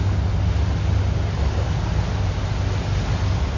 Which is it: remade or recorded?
recorded